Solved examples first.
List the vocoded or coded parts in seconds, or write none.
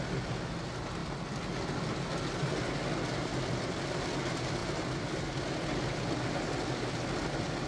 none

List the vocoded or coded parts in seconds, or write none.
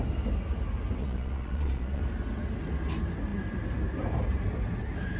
1.0-2.0 (vocoder, Vocos)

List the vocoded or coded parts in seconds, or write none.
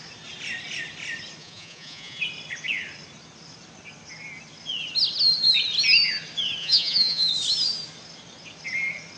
1.4-2.2 (vocoder, Vocos); 6.6-7.3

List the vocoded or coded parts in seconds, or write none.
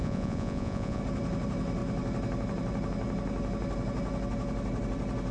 0.0-1.0 (vocoder, Vocos)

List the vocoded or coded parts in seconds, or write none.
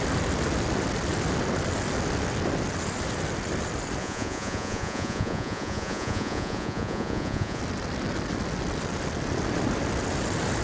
4.0-7.6 (vocoder, Vocos)